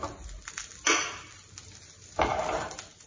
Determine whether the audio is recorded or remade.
recorded